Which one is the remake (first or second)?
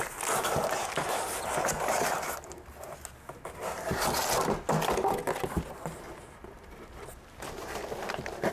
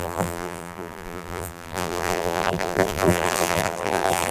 second